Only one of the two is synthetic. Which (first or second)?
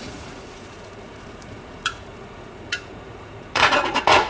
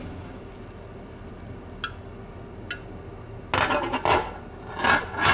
first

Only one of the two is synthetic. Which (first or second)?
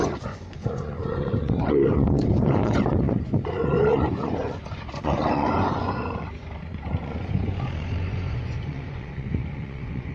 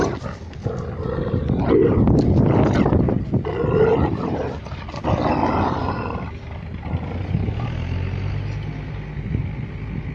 first